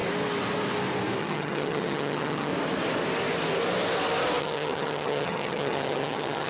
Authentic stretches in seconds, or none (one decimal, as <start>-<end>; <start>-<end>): 0.0-1.2; 2.5-4.4